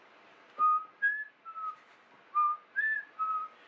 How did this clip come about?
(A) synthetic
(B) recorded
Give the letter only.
B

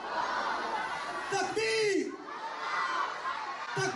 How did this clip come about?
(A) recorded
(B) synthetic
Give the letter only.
A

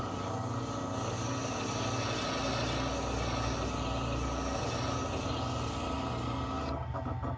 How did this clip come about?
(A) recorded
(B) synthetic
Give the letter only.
A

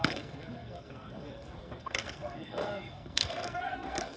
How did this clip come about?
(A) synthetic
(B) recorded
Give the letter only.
A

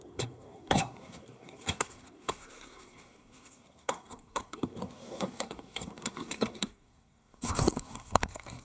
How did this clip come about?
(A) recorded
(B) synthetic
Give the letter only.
B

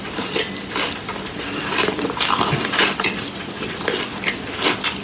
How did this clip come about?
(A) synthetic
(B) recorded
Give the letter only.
B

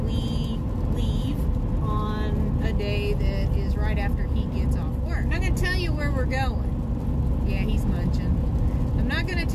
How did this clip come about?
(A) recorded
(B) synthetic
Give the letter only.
A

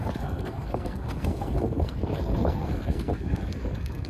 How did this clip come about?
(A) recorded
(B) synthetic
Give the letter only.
B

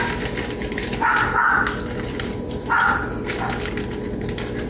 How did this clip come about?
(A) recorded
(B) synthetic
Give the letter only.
A